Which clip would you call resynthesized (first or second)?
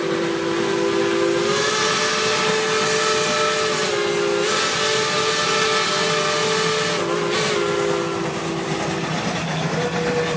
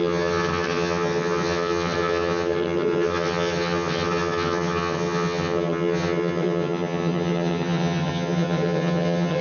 second